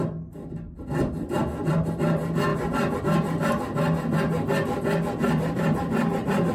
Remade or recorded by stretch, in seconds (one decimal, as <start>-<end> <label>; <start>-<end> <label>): 0.0-2.5 recorded; 2.5-3.0 remade; 3.0-5.2 recorded; 5.2-6.5 remade